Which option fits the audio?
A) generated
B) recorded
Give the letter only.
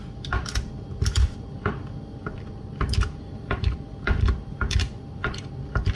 A